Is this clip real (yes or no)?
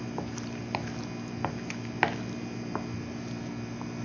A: yes